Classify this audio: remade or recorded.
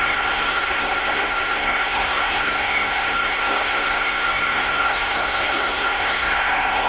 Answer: remade